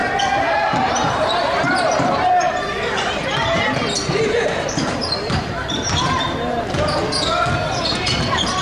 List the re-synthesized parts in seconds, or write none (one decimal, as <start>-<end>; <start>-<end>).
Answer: 0.9-7.0; 7.8-8.6